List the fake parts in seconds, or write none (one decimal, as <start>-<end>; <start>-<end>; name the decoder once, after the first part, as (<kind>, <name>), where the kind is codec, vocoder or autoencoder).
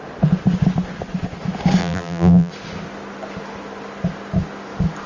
1.8-2.5 (vocoder, BigVGAN v2)